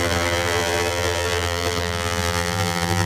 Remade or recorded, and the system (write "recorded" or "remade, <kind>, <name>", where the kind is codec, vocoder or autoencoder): remade, vocoder, BigVGAN v2